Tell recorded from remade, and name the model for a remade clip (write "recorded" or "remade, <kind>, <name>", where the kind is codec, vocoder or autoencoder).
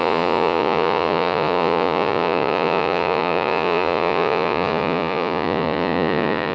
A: remade, vocoder, Vocos